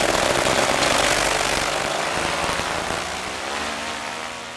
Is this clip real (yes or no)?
yes